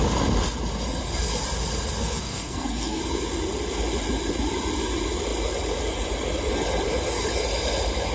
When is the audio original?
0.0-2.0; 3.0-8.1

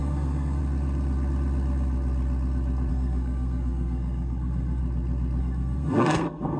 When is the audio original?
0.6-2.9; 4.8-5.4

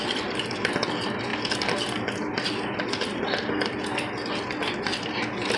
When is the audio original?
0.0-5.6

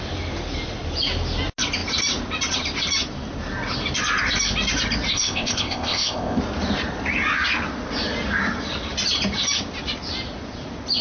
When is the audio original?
0.0-5.1; 6.4-11.0

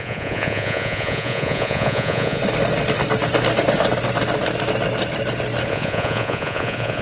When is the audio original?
2.4-5.7

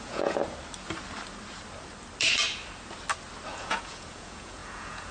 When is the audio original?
0.4-3.5

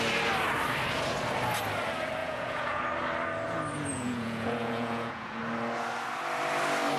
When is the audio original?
0.0-2.2; 2.8-3.9; 5.4-7.0